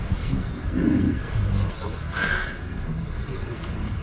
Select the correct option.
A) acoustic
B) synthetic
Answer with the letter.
B